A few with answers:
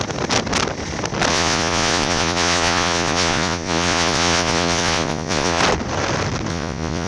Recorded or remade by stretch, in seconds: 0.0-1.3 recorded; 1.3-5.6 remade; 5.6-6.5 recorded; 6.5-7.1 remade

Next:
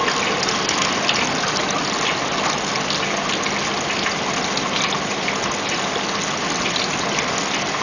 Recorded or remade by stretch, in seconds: 0.0-7.8 recorded

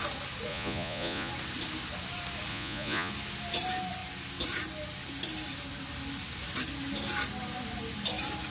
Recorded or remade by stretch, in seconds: 0.0-0.5 recorded; 0.5-1.3 remade; 1.3-2.5 recorded; 2.5-3.1 remade; 3.1-8.5 recorded

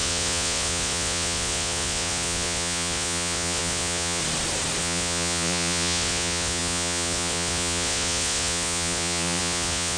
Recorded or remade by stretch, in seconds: 0.0-4.2 remade; 4.2-4.8 recorded; 4.8-10.0 remade

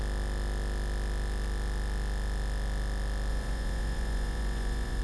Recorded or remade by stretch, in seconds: 0.0-3.3 recorded; 3.3-5.0 remade

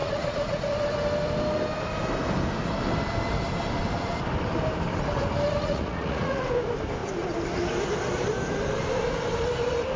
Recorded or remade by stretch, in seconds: 0.0-0.7 remade; 0.7-5.6 recorded; 5.6-6.5 remade; 6.5-10.0 recorded

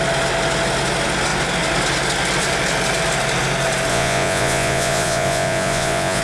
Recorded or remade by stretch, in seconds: 0.0-3.9 recorded; 3.9-6.2 remade